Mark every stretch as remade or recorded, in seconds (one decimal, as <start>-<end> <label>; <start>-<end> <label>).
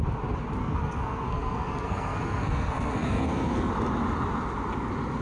0.0-0.6 recorded; 0.6-3.7 remade; 3.7-5.2 recorded